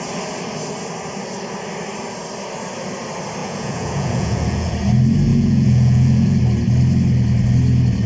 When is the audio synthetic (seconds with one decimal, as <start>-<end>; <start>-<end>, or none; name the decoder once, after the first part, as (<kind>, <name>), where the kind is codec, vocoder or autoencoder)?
3.4-4.7 (vocoder, Vocos); 5.3-6.4